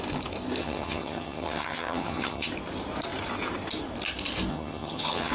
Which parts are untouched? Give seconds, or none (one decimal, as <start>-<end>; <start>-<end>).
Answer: 0.0-0.6; 2.5-4.5